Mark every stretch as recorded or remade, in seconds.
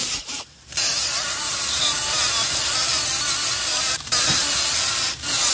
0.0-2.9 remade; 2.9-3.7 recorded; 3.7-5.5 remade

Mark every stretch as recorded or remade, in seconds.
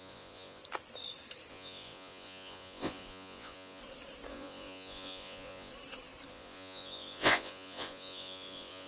0.0-0.6 remade; 0.6-1.5 recorded; 1.5-3.8 remade; 3.8-4.3 recorded; 4.3-5.7 remade; 5.7-6.3 recorded; 6.3-8.9 remade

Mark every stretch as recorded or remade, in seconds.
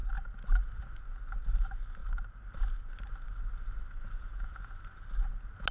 0.0-1.0 remade; 1.0-2.0 recorded; 2.0-5.2 remade; 5.2-5.7 recorded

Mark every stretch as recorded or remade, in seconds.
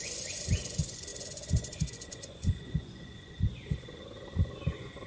0.0-5.1 remade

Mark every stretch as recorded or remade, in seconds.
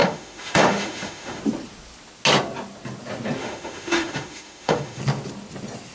0.0-1.4 remade; 1.4-3.4 recorded; 3.4-5.0 remade; 5.0-5.9 recorded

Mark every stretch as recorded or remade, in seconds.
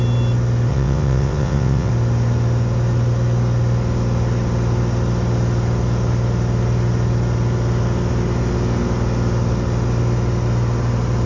0.0-0.7 recorded; 0.7-1.9 remade; 1.9-11.3 recorded